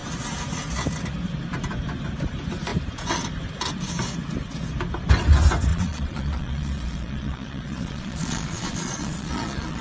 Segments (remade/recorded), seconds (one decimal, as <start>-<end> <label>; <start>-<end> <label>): 0.0-5.7 recorded; 5.7-9.8 remade